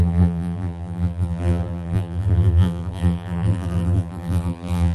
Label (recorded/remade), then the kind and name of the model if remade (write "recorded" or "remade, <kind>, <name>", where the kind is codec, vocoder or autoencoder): remade, vocoder, BigVGAN v2